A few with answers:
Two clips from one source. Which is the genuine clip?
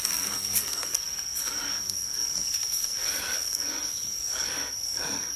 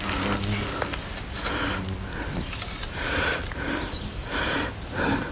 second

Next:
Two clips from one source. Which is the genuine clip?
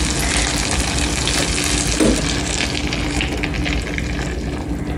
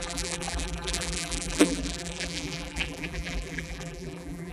first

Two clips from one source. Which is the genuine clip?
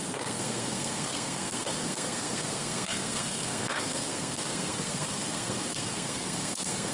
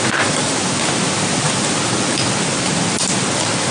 second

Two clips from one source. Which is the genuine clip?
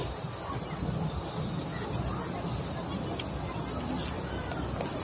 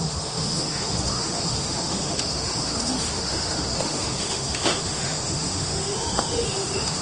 first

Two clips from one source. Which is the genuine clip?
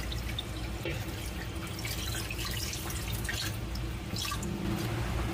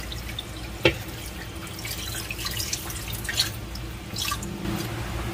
second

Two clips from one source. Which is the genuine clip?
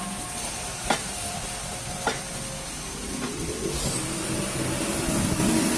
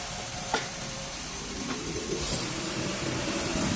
first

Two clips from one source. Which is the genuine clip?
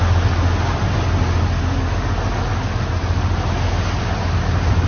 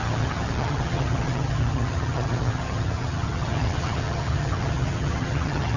first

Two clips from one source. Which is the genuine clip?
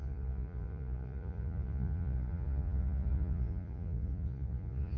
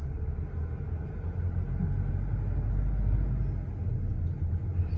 second